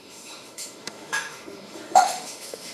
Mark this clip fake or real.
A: fake